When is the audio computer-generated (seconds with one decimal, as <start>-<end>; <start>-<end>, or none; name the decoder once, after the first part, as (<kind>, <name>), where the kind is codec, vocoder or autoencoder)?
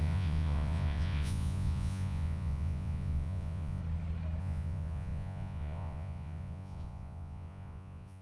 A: 0.0-3.8 (vocoder, Vocos); 4.4-8.2